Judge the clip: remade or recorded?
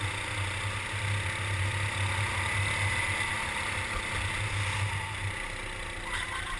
recorded